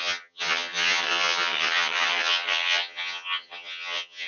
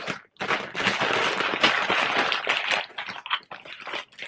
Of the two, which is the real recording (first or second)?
second